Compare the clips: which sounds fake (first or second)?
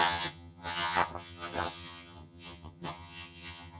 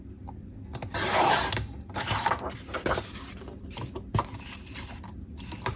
first